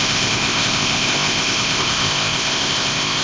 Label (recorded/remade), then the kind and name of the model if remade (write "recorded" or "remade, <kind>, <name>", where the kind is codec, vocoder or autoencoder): remade, codec, ZipCodec